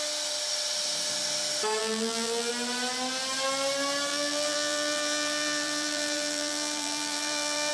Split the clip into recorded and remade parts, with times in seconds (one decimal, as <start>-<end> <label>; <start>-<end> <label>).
0.0-1.8 recorded; 1.8-2.5 remade; 2.5-4.1 recorded; 4.1-7.7 remade